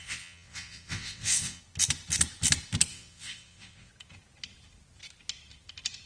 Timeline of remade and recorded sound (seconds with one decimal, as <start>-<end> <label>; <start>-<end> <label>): 0.0-1.6 remade; 1.6-2.9 recorded; 2.9-3.9 remade; 3.9-6.1 recorded